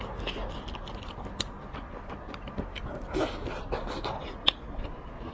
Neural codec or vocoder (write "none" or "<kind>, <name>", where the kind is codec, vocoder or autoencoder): none